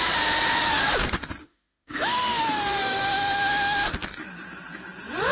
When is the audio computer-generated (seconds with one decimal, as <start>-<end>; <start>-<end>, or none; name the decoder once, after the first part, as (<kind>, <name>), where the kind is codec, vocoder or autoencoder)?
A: 1.4-3.9 (autoencoder, DAC-VAE)